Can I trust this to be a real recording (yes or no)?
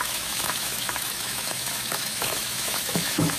no